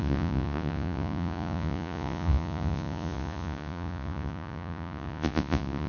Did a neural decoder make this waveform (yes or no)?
yes